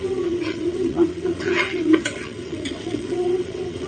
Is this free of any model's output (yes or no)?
no